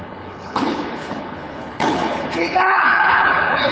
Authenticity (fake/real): fake